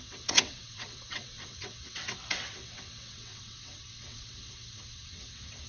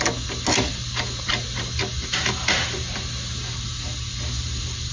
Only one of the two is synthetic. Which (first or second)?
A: first